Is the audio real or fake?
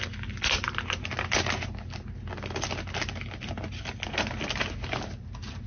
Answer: real